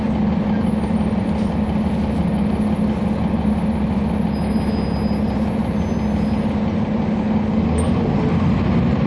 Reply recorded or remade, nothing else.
recorded